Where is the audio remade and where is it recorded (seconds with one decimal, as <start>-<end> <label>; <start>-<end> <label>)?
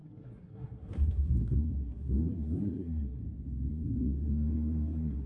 0.0-3.2 remade; 3.2-3.7 recorded; 3.7-5.3 remade